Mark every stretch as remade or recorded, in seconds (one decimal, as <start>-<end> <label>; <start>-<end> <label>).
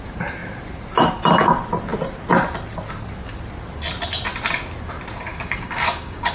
0.0-5.3 recorded; 5.3-6.3 remade